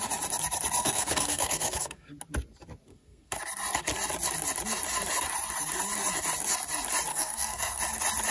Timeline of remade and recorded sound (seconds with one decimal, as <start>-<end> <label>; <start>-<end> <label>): 0.0-0.8 recorded; 0.8-2.1 remade; 2.1-2.9 recorded; 2.9-3.4 remade; 3.4-7.1 recorded; 7.1-7.8 remade; 7.8-8.3 recorded